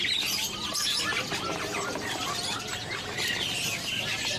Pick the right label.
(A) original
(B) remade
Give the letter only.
A